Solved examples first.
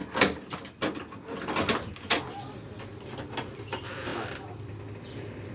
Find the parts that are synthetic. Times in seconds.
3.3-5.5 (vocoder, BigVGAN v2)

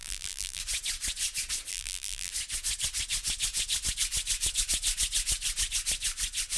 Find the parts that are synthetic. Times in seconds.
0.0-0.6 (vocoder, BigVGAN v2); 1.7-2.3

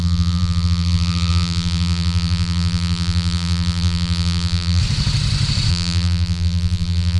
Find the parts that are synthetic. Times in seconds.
0.0-4.8 (vocoder, BigVGAN v2); 5.7-7.2

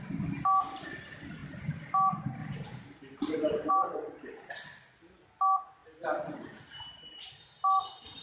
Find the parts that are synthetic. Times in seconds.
1.4-1.9 (vocoder, BigVGAN v2); 2.4-3.7

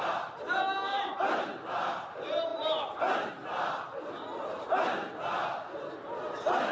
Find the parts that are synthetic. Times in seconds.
0.0-2.5 (vocoder, BigVGAN v2)

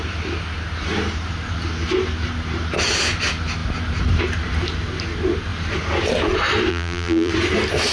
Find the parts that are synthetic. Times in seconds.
6.7-7.3 (vocoder, BigVGAN v2)

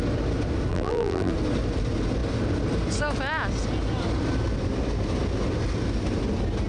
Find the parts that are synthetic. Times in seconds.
0.7-1.3 (vocoder, BigVGAN v2)

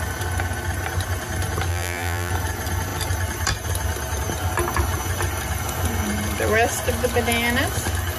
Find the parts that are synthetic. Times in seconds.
1.7-2.3 (vocoder, BigVGAN v2)